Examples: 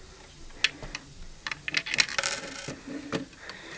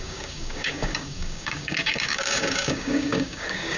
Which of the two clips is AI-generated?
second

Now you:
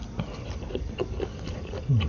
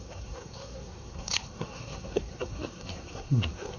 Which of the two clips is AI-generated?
second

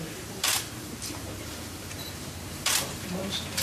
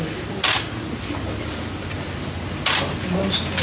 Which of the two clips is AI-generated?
first